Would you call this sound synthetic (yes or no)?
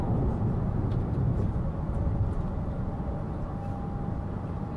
no